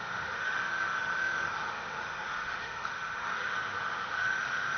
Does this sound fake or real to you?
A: fake